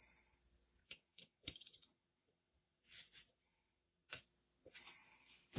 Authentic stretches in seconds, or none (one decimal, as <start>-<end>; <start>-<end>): 0.0-0.8; 4.2-5.6